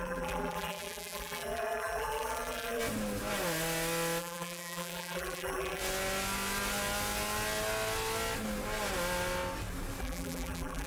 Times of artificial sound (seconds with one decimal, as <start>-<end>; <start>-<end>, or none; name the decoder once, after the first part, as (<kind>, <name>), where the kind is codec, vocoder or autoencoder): 0.0-2.8 (vocoder, BigVGAN v2); 4.2-5.8; 10.0-10.9